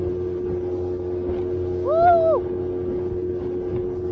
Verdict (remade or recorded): recorded